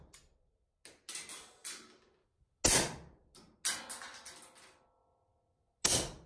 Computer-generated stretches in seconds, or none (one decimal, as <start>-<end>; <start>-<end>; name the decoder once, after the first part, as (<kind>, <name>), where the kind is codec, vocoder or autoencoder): none